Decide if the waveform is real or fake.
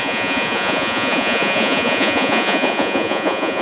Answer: fake